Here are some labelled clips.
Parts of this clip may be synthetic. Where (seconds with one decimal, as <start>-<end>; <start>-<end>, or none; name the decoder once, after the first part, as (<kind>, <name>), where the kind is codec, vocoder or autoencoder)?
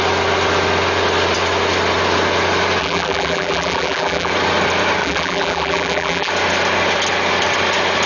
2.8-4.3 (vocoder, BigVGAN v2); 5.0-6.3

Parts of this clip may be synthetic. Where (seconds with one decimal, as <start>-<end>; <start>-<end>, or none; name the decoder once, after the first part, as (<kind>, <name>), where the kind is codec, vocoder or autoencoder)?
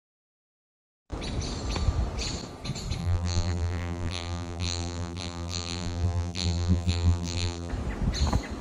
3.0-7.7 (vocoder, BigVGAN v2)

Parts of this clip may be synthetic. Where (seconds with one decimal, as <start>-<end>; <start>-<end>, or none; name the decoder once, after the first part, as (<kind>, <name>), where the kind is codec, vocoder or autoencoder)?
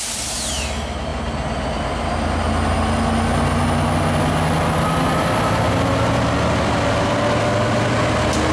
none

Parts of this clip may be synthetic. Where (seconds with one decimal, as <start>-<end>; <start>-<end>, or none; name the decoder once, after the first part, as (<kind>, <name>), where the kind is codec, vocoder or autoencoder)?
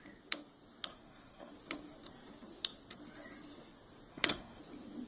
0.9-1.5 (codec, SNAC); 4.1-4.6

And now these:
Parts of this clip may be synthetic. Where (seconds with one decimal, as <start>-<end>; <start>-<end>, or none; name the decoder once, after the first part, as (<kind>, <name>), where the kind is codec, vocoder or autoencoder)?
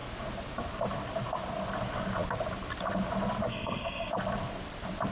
3.5-4.1 (codec, SNAC)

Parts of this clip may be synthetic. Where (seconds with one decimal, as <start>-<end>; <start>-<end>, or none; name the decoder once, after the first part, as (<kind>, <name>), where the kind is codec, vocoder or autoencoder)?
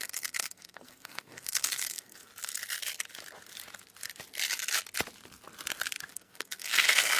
0.0-2.3 (codec, SNAC); 6.1-7.2